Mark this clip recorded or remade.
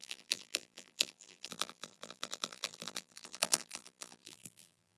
remade